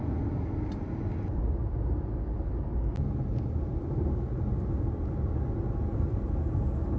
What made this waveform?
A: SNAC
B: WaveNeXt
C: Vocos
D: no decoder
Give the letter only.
D